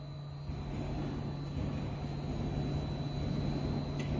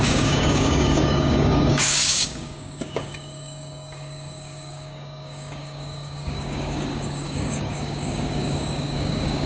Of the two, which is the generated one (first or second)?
second